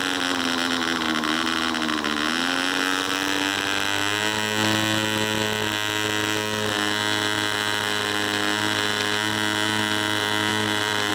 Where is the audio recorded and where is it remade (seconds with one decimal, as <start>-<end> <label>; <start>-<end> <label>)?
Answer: 0.0-10.5 recorded; 10.5-11.1 remade